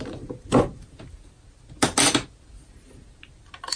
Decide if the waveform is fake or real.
real